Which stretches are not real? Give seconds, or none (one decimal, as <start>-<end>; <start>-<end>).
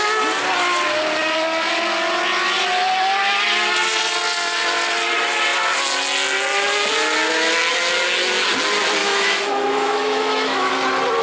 9.0-10.7